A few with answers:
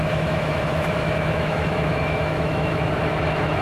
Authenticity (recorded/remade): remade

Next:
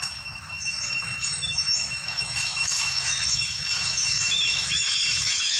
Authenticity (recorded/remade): remade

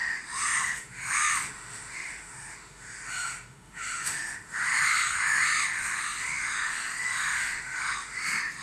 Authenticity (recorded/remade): remade